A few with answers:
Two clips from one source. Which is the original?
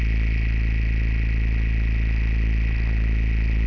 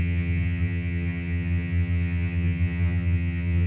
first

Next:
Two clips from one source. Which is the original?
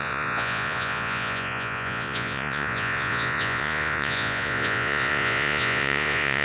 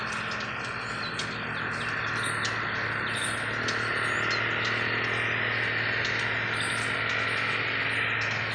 second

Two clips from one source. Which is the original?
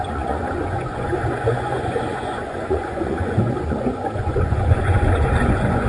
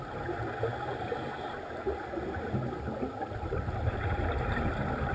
second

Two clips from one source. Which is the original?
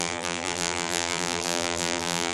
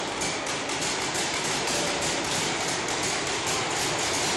second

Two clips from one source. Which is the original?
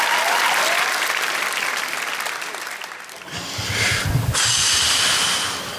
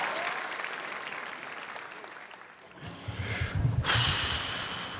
second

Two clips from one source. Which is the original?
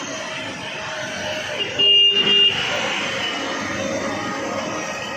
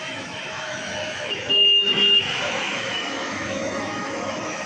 first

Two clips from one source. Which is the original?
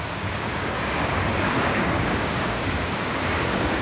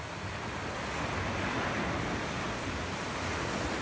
second